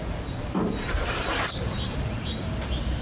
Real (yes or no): no